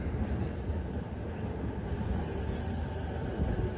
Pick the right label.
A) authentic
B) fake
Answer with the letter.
A